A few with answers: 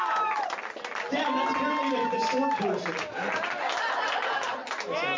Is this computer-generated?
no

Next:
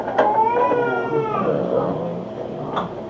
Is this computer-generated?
no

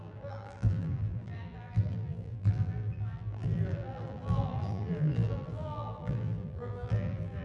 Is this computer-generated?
yes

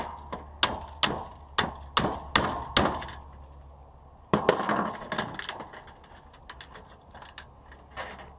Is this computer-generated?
no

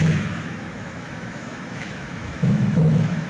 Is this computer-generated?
yes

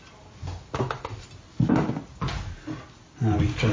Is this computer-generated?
no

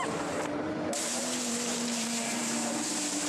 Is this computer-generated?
yes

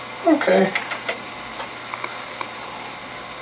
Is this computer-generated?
no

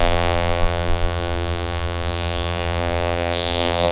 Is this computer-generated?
yes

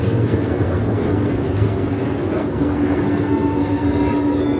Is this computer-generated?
yes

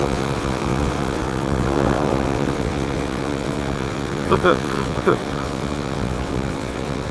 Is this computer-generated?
yes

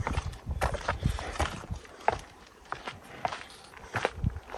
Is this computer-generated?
yes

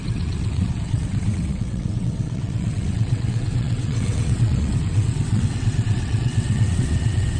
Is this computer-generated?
yes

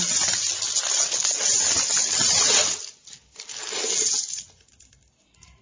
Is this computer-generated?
no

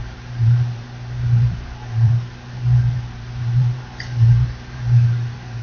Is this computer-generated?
yes